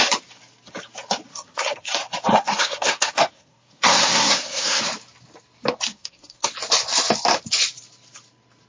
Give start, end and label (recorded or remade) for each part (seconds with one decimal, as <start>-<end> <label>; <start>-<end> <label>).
0.0-1.3 recorded; 1.3-1.9 remade; 1.9-2.3 recorded; 2.3-4.8 remade; 4.8-5.9 recorded; 5.9-6.5 remade; 6.5-8.7 recorded